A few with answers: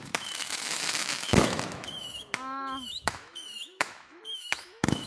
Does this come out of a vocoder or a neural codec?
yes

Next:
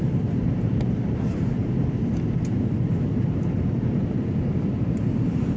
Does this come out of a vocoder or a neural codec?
no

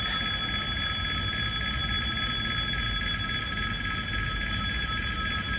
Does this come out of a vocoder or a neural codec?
no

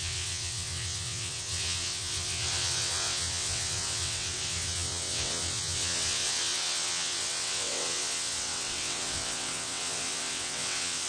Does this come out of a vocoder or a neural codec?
yes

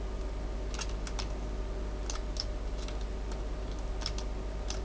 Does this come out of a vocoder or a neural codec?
no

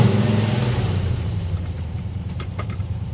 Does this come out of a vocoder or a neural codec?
yes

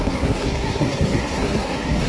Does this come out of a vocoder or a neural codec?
yes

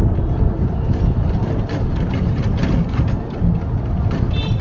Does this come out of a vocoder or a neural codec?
no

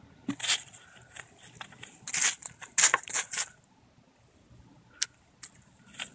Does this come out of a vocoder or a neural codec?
no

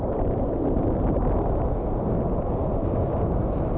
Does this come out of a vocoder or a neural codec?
no